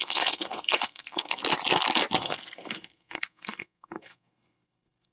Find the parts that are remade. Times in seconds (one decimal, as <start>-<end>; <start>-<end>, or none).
0.0-1.4; 2.2-5.1